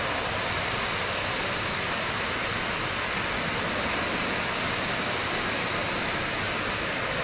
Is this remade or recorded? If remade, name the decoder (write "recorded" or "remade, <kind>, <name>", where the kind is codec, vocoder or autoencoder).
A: recorded